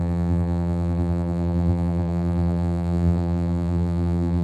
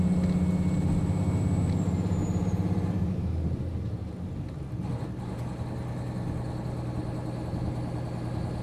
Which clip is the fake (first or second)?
first